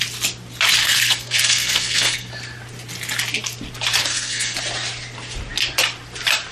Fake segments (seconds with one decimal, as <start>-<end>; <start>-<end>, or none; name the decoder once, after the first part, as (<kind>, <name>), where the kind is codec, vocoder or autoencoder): 0.8-2.3 (codec, SNAC); 4.0-4.6